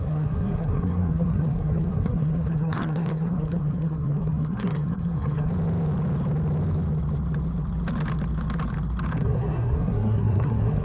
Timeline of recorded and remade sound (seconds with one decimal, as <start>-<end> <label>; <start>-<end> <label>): 0.0-5.5 remade; 5.5-9.1 recorded; 9.1-10.8 remade